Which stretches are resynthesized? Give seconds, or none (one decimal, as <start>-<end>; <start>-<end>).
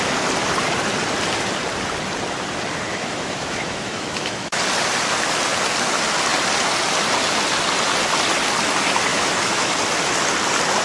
2.9-4.6; 9.1-9.7